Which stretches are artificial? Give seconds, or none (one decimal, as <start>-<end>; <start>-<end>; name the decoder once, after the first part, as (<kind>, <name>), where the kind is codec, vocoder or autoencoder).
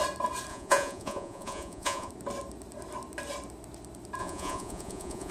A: 0.5-2.1 (vocoder, Vocos); 4.2-5.3